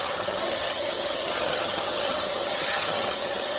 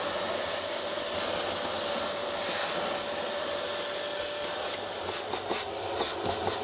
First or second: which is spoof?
first